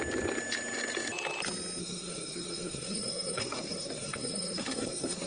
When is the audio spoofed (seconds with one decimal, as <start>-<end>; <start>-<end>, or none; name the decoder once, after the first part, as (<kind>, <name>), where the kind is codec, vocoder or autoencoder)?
1.8-5.3 (codec, SNAC)